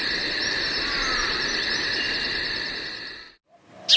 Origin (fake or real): real